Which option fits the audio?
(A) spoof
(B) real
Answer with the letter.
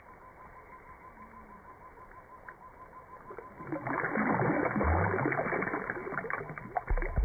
B